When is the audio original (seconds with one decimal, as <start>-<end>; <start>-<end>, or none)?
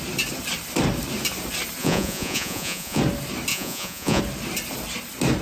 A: 0.0-1.8; 3.0-3.5; 4.2-5.4